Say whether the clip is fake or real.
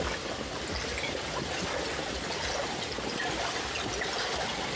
real